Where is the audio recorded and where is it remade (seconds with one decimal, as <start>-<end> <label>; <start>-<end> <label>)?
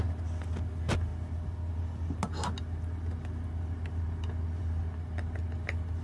0.0-6.0 recorded